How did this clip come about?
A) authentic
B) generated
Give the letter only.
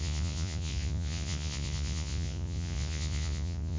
B